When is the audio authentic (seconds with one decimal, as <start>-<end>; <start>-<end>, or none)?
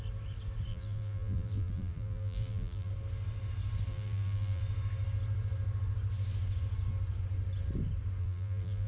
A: 0.0-0.7; 2.9-3.9; 4.6-8.2